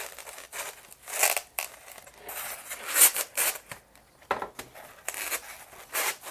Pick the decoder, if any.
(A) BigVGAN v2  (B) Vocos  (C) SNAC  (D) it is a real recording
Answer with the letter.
D